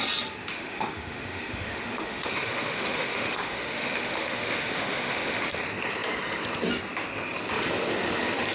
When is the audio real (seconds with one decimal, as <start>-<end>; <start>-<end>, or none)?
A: 0.0-0.5; 5.6-8.5